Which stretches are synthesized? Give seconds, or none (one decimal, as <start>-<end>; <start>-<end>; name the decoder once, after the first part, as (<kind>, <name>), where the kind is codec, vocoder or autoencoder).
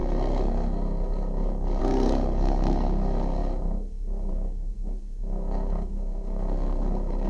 0.0-7.3 (codec, SNAC)